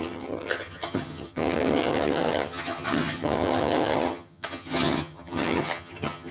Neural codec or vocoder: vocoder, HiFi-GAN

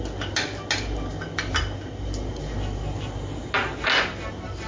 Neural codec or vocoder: none